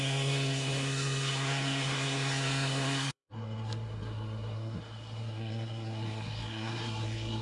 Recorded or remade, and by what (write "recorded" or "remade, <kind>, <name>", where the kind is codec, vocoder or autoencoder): remade, codec, SNAC